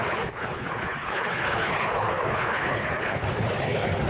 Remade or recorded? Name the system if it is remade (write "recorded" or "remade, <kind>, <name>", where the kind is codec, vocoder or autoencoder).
remade, codec, HILCodec